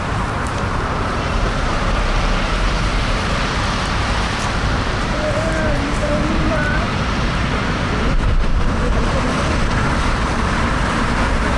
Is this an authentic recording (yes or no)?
no